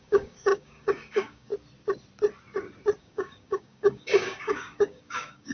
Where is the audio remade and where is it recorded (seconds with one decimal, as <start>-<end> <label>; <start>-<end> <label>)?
0.0-1.5 remade; 1.5-3.0 recorded; 3.0-5.5 remade